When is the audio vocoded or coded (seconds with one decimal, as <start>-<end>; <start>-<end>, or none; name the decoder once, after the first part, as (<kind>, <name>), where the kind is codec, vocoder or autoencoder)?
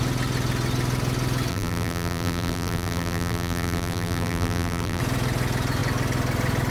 1.5-5.0 (vocoder, BigVGAN v2)